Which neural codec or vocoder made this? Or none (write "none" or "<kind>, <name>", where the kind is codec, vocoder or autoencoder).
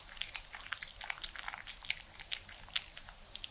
none